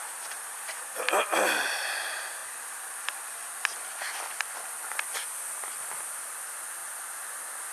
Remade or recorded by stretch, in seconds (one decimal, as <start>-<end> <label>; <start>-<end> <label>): 0.0-1.5 remade; 1.5-7.7 recorded